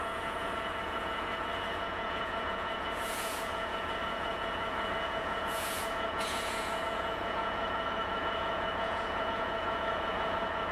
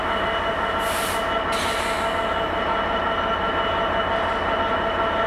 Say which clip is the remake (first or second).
first